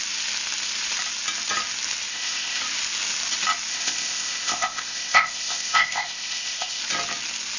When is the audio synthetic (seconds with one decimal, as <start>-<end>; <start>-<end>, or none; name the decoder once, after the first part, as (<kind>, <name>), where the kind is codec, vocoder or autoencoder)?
2.1-2.6 (codec, ZipCodec); 3.7-6.8